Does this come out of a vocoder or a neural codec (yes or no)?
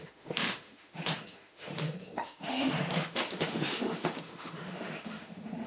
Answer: yes